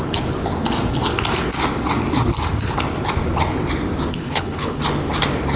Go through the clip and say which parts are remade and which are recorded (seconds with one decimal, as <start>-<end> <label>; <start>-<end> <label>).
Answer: 0.0-4.1 recorded; 4.1-4.8 remade; 4.8-5.6 recorded